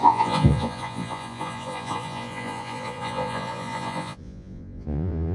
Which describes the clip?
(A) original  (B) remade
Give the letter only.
B